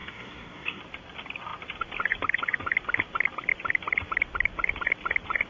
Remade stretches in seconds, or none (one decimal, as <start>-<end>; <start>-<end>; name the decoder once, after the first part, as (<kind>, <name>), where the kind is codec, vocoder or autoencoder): 0.0-0.8 (codec, DAC)